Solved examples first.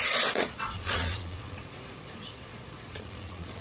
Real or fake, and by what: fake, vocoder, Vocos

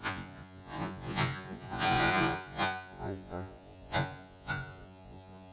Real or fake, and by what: fake, vocoder, Vocos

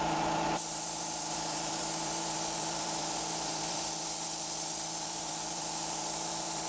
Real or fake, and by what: fake, vocoder, BigVGAN v2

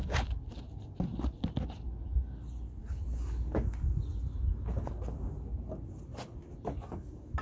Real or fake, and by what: real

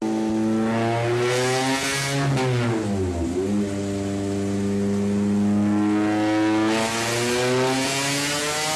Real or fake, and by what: real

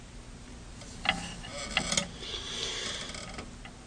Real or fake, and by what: real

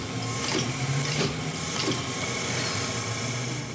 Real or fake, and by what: real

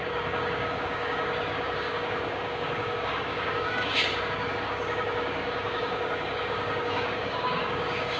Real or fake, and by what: fake, codec, DAC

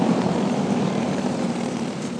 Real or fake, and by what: fake, vocoder, BigVGAN v2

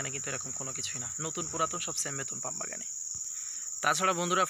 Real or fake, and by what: real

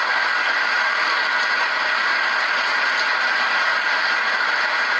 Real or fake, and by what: real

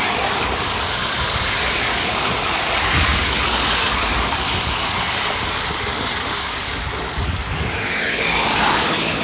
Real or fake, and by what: fake, codec, DAC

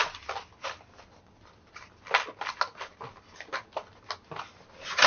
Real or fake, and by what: real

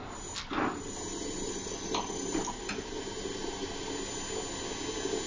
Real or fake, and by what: real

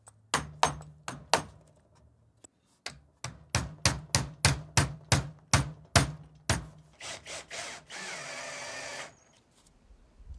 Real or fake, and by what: real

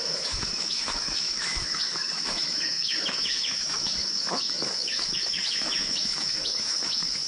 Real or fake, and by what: fake, autoencoder, DAC-VAE